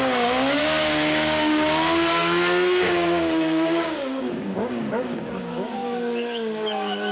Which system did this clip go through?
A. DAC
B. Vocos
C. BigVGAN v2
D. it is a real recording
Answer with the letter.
A